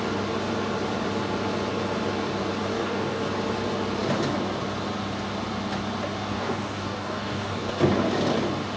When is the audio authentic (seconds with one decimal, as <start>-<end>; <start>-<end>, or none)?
0.0-2.7; 3.2-6.3; 7.8-8.8